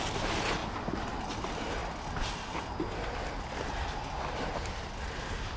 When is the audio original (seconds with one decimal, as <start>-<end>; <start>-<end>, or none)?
0.0-5.6